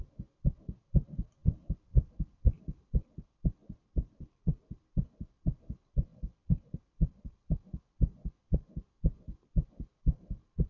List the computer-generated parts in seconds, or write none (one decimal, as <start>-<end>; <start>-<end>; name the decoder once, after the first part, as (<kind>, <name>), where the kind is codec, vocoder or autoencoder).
1.4-2.6 (vocoder, BigVGAN v2); 3.6-5.4; 6.1-7.4